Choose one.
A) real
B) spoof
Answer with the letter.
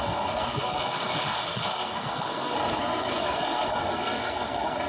B